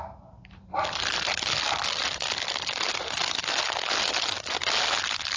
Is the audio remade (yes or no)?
no